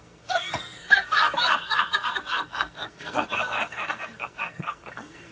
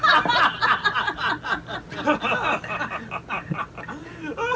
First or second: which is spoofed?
first